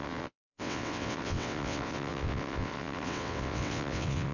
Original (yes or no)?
no